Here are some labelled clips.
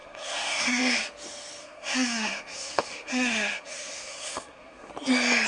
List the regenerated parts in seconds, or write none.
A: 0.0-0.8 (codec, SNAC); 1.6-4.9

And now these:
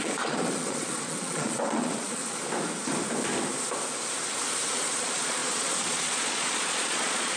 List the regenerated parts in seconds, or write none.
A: 0.0-2.2 (vocoder, Vocos); 4.7-7.4